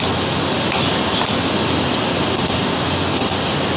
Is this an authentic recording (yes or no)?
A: yes